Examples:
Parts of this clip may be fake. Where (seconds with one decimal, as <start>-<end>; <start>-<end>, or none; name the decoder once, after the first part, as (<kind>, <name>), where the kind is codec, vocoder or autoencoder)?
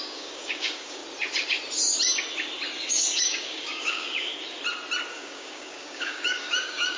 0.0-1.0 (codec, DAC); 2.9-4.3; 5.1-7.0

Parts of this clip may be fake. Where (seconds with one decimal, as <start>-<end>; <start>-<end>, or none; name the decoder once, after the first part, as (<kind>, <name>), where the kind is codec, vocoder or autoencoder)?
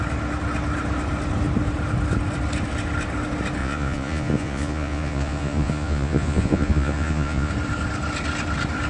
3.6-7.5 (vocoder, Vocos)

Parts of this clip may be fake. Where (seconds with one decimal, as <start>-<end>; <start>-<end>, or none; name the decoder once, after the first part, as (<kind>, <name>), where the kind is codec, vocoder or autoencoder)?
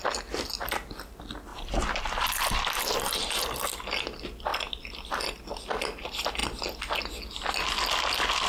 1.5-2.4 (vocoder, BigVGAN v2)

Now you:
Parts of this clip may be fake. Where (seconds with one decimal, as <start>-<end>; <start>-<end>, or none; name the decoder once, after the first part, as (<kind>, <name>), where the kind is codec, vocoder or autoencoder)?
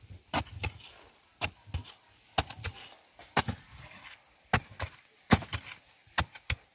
none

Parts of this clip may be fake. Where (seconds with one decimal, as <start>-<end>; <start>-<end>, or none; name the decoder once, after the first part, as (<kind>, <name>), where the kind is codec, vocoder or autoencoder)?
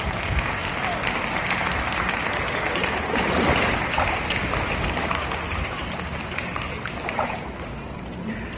none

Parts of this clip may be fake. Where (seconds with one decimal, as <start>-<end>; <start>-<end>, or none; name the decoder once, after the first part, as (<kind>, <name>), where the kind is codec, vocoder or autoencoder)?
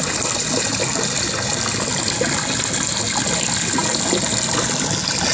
none